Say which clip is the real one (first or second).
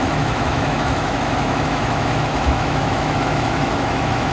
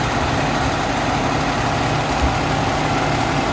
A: second